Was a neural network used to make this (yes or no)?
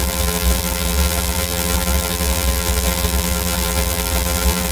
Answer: yes